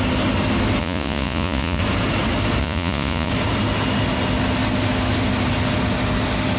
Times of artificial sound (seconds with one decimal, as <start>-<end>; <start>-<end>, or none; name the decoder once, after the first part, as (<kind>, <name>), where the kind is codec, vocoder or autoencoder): 0.8-1.8 (vocoder, Vocos); 2.6-3.3